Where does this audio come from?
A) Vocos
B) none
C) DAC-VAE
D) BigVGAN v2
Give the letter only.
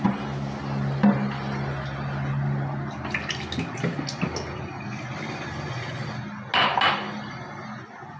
B